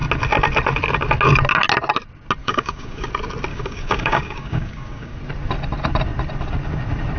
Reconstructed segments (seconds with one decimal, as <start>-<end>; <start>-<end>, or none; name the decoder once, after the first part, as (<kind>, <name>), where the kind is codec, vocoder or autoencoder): 2.4-3.1 (codec, DAC); 3.5-5.2